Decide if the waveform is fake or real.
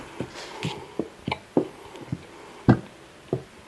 real